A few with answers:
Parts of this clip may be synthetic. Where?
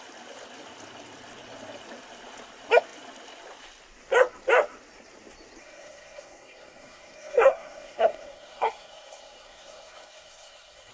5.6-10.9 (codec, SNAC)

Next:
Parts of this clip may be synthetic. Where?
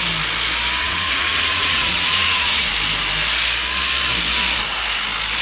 0.8-2.7 (vocoder, Vocos)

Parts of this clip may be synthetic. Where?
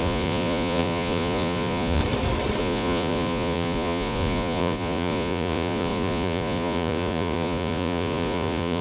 0.0-2.0 (vocoder, Vocos); 2.6-8.8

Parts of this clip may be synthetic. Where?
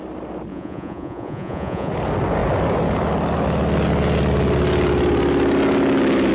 0.5-1.9 (vocoder, Vocos)